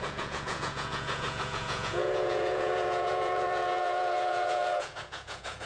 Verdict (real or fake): fake